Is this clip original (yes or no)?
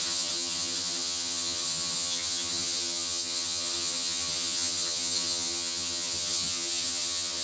no